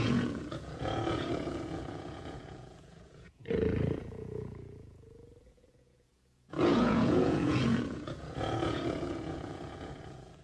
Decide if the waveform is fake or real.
fake